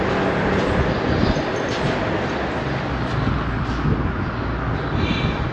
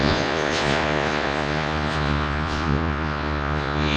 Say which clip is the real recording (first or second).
first